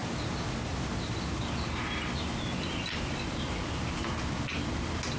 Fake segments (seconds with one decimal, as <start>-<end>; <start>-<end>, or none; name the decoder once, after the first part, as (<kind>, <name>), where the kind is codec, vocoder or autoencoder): none